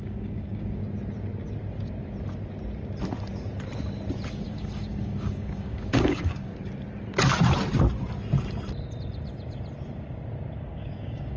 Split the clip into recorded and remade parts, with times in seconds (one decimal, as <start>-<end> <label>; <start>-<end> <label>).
0.0-0.8 remade; 0.8-4.3 recorded; 4.3-6.5 remade; 6.5-10.6 recorded; 10.6-11.4 remade